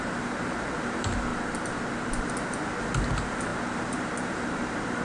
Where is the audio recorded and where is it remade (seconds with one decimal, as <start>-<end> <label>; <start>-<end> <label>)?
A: 0.0-1.3 recorded; 1.3-2.3 remade; 2.3-3.5 recorded; 3.5-4.6 remade; 4.6-5.0 recorded